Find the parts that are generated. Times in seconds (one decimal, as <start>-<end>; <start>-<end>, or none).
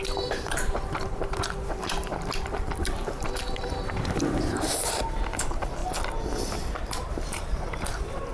0.0-5.8; 7.1-8.3